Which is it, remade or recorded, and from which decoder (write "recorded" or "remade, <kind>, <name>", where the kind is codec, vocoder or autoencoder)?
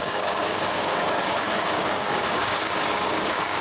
remade, codec, DAC